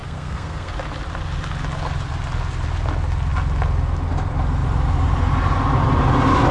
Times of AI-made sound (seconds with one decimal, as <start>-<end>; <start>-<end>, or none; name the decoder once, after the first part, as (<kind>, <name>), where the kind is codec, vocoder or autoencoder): 0.0-0.7 (codec, SNAC)